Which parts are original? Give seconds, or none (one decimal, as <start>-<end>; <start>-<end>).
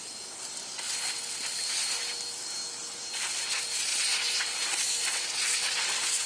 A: 0.0-6.3